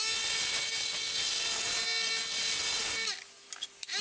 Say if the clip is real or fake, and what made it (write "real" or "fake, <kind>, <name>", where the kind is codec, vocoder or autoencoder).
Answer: real